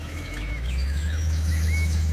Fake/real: fake